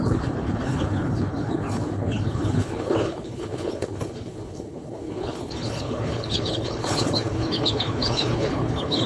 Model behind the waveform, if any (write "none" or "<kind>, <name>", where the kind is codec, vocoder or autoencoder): codec, HILCodec